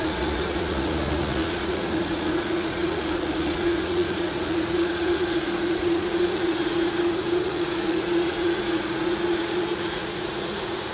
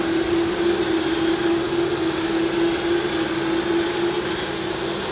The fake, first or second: first